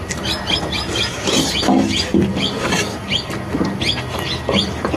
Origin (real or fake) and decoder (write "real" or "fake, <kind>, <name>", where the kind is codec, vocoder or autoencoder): real